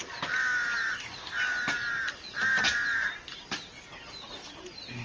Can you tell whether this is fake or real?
real